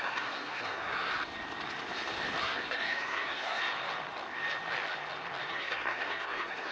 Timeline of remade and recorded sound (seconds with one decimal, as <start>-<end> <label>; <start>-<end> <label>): 0.0-1.1 remade; 1.1-2.4 recorded; 2.4-3.6 remade; 3.6-5.5 recorded; 5.5-6.7 remade